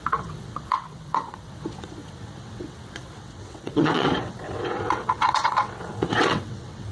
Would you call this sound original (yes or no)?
no